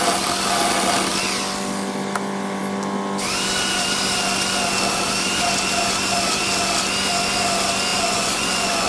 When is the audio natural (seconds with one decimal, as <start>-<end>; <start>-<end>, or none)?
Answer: 0.0-7.9